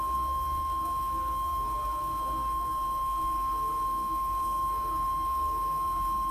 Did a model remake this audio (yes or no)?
yes